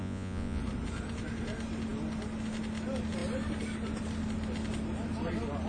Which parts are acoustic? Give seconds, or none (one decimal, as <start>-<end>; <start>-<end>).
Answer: 0.6-5.7